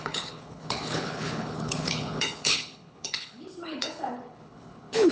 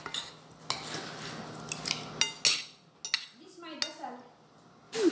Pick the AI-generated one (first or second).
first